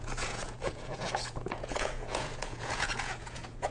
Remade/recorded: remade